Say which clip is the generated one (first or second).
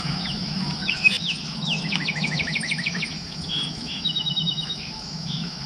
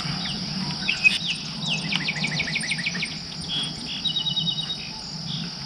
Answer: first